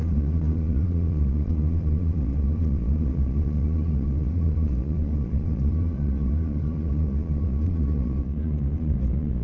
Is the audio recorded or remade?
remade